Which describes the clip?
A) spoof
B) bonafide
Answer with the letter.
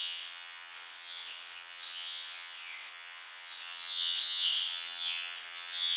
A